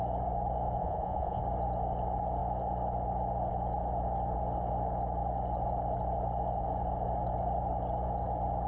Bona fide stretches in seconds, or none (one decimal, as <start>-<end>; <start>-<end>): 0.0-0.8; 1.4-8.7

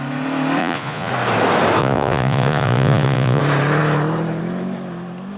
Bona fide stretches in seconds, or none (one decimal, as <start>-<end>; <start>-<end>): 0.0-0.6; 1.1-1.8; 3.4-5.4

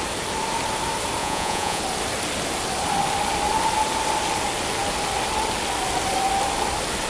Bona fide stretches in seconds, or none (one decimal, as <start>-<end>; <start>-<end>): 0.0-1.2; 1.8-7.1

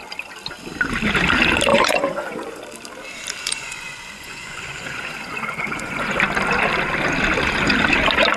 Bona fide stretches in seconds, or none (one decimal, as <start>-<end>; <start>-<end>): 0.0-1.7; 2.6-3.4; 6.2-8.4